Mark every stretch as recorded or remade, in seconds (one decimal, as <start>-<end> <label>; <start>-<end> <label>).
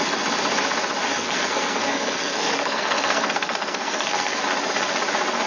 0.0-1.1 recorded; 1.1-4.4 remade; 4.4-5.5 recorded